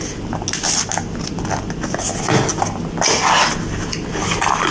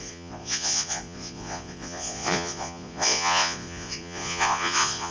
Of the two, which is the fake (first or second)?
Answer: second